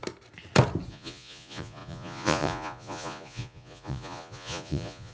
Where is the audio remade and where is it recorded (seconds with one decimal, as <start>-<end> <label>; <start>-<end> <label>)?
0.0-0.9 recorded; 0.9-5.1 remade